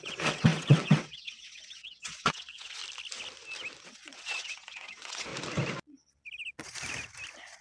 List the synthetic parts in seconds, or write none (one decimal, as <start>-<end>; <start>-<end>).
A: 0.0-2.8; 3.8-5.3